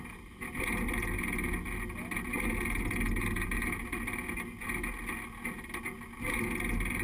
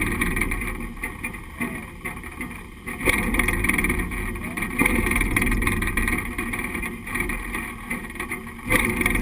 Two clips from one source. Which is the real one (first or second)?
first